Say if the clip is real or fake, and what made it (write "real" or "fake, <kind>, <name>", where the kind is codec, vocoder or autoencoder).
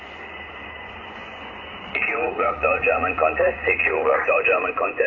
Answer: fake, vocoder, Vocos